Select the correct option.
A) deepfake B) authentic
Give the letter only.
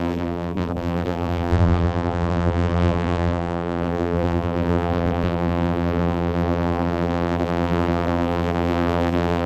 A